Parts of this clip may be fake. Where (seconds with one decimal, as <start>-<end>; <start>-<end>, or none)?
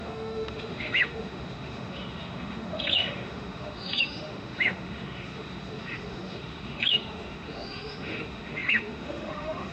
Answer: 0.0-9.7